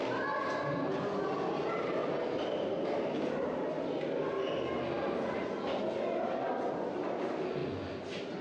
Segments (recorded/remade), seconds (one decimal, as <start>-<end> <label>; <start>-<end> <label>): 0.0-8.4 recorded